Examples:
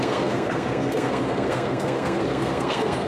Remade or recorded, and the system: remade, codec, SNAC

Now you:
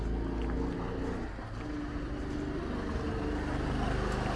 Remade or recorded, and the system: recorded